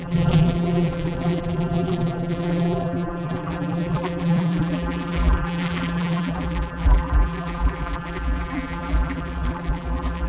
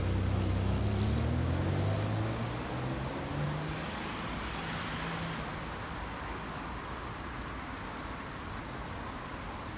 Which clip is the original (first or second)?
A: second